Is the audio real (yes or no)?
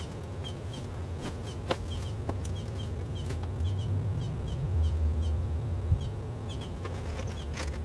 yes